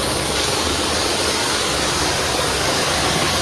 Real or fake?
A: fake